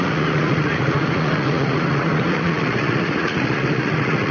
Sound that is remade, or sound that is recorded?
remade